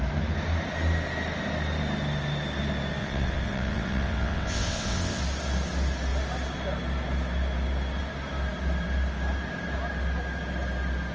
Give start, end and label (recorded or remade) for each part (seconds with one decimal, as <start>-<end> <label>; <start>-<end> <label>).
0.0-3.0 recorded; 3.0-5.2 remade; 5.2-11.1 recorded

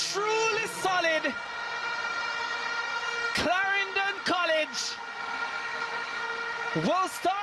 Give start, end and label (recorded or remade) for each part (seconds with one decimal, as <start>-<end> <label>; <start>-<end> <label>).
0.0-5.7 recorded; 5.7-6.2 remade; 6.2-7.4 recorded

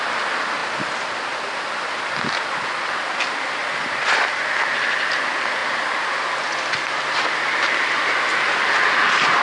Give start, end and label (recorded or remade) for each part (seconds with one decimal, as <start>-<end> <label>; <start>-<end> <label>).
0.0-0.6 remade; 0.6-2.5 recorded; 2.5-5.6 remade; 5.6-6.4 recorded; 6.4-9.4 remade